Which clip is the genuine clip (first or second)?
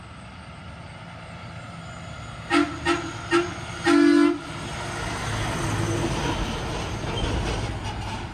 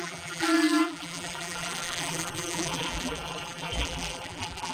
first